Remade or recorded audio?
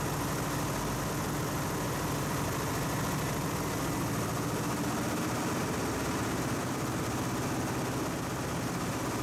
recorded